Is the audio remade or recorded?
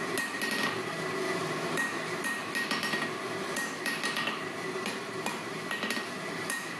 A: remade